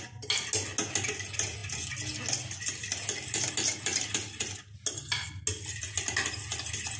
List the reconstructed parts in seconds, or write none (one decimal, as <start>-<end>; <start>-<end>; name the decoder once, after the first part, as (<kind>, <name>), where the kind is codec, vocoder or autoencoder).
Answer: none